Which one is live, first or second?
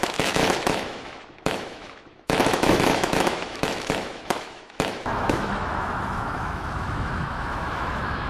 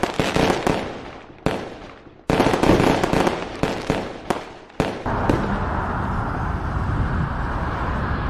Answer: second